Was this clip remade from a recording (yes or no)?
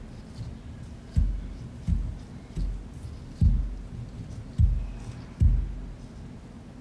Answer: no